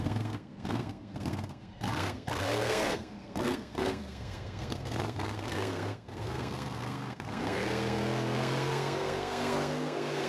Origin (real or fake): fake